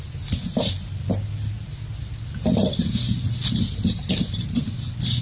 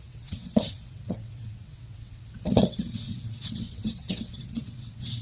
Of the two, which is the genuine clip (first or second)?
first